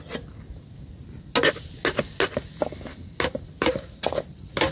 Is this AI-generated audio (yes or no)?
no